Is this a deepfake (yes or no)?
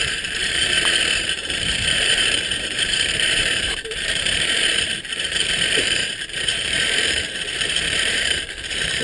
yes